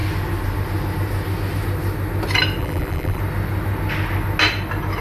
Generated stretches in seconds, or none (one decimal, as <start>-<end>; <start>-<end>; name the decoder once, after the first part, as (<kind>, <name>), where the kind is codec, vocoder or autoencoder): 2.6-3.2 (vocoder, BigVGAN v2)

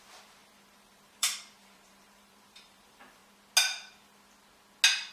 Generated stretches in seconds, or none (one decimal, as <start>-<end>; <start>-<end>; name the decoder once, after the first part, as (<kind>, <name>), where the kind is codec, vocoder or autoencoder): 0.0-3.2 (vocoder, BigVGAN v2)

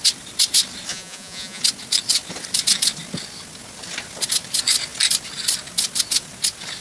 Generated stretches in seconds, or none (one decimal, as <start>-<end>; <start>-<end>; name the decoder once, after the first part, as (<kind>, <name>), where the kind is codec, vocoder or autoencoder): 0.9-1.6 (vocoder, Vocos)